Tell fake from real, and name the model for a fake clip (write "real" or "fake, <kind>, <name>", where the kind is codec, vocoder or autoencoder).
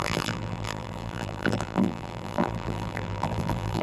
fake, vocoder, BigVGAN v2